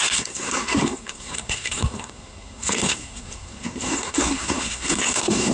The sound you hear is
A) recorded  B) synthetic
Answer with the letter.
B